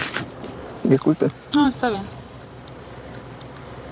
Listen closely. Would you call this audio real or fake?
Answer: fake